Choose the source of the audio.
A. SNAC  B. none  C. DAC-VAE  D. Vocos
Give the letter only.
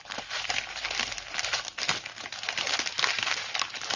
B